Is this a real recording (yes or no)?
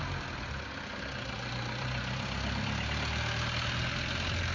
yes